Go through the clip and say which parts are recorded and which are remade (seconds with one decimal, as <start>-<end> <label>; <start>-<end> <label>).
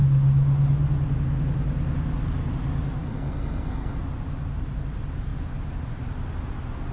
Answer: 0.0-3.0 recorded; 3.0-4.0 remade; 4.0-6.9 recorded